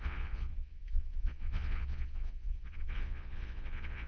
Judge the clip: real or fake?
fake